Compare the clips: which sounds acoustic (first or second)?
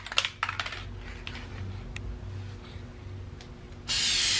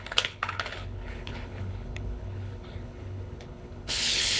first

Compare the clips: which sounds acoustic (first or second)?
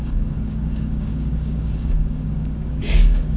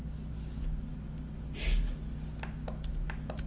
second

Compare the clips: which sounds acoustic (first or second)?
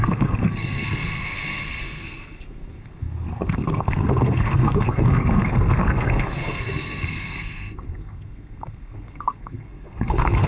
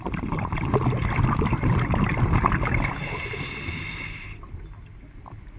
second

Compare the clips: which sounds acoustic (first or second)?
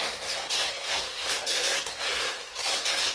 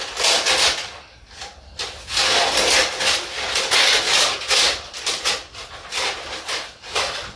second